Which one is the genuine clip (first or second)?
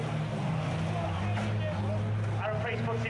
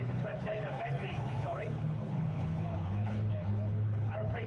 first